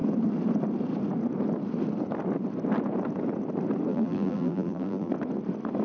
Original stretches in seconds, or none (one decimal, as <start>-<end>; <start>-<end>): 0.0-3.9; 5.1-5.8